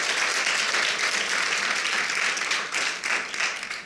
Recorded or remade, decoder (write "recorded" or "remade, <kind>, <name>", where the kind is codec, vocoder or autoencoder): recorded